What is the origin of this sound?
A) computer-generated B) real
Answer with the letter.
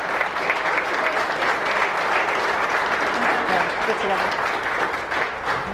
B